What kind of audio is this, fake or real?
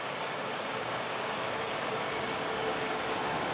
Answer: fake